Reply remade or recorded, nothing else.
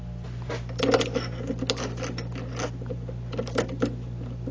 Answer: recorded